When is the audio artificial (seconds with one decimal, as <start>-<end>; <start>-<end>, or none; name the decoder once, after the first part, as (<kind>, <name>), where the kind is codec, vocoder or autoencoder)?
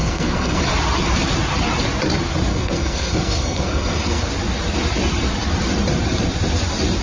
0.0-0.6 (codec, SNAC); 2.5-4.3